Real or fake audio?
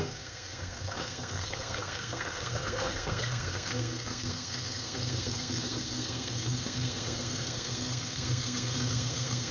fake